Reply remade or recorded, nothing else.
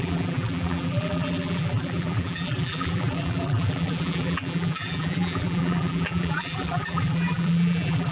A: remade